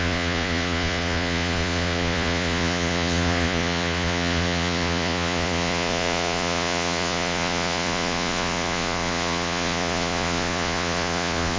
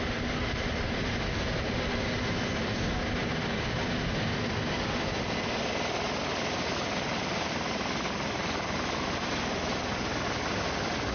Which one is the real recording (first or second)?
second